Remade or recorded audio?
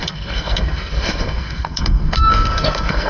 remade